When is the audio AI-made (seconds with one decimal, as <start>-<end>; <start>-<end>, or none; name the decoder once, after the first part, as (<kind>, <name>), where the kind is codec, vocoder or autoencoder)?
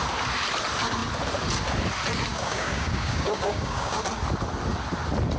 2.3-4.0 (codec, DAC)